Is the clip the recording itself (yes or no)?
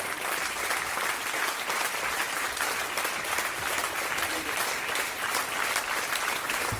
yes